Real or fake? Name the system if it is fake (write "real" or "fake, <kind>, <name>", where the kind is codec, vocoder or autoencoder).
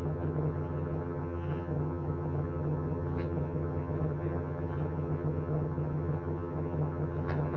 fake, vocoder, HiFi-GAN